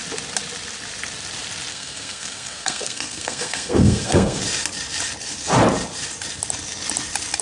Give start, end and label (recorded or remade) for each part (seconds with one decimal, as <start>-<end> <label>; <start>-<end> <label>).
0.0-1.7 recorded; 1.7-4.4 remade; 4.4-7.4 recorded